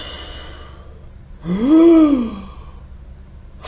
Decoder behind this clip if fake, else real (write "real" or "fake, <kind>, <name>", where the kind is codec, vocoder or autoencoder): real